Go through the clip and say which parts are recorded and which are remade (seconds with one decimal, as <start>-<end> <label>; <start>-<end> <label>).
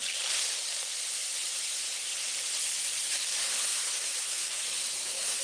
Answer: 0.0-3.7 recorded; 3.7-5.4 remade